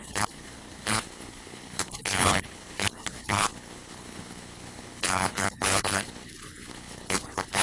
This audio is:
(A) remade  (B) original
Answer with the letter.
A